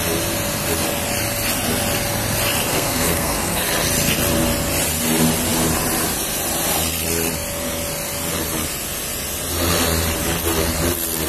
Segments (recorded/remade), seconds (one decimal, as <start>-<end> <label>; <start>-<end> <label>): 0.0-2.7 recorded; 2.7-3.6 remade; 3.6-11.3 recorded